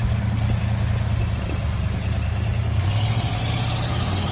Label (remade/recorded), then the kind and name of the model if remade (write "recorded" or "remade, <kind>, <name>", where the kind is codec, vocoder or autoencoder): recorded